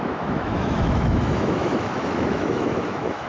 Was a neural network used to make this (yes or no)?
yes